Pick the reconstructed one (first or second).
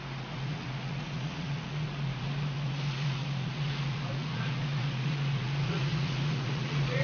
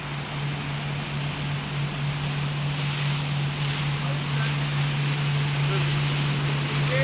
first